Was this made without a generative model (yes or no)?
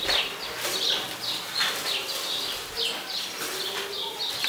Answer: yes